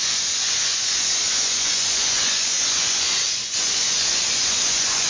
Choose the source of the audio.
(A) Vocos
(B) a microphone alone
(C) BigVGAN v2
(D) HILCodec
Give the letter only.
A